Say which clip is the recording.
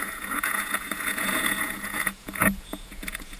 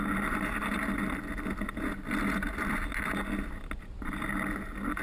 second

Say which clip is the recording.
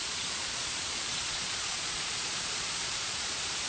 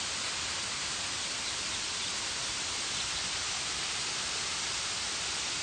second